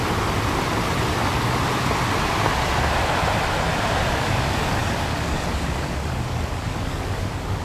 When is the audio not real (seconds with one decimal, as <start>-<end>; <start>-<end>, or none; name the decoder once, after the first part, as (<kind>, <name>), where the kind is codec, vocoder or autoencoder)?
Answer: 3.9-7.6 (codec, DAC)